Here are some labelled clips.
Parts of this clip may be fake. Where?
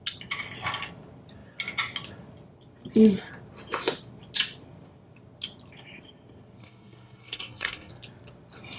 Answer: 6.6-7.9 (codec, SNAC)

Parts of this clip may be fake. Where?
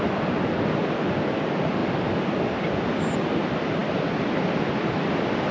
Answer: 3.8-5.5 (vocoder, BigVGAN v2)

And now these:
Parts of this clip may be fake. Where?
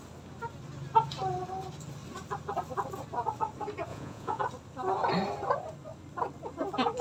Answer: 3.9-4.4 (vocoder, Vocos)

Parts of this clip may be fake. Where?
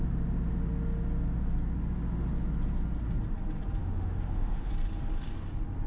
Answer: 3.8-4.7 (autoencoder, DAC-VAE)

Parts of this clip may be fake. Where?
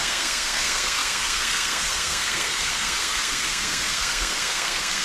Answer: 0.0-5.0 (codec, SNAC)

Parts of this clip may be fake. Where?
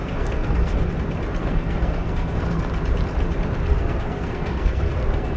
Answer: 0.0-0.9 (codec, SNAC); 1.4-2.6; 3.7-5.4